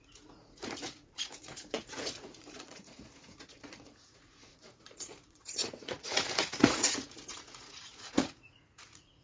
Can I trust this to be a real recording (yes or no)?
no